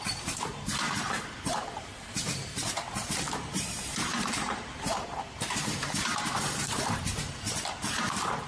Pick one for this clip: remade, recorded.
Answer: remade